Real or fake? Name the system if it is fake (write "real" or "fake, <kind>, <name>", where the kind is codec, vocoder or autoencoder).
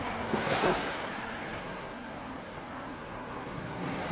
fake, codec, SNAC